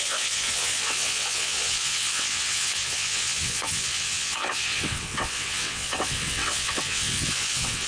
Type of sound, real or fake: fake